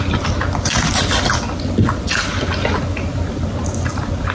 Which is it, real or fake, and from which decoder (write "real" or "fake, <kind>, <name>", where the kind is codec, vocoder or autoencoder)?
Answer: real